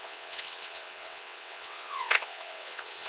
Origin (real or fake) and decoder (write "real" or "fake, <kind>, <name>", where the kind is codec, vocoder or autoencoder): fake, vocoder, WaveNeXt